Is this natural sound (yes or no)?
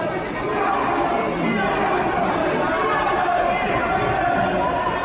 yes